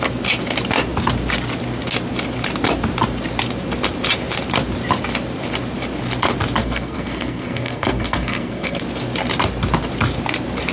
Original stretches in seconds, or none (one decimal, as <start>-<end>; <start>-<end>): 0.0-6.6; 8.8-10.7